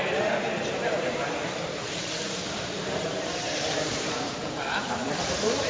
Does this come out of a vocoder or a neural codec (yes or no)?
yes